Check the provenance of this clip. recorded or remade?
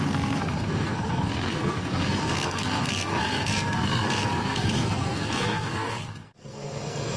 remade